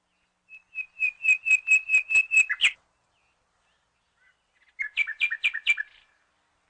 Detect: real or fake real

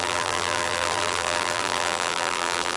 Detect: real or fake fake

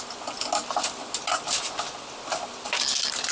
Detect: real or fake real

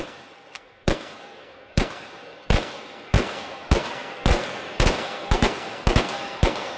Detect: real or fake fake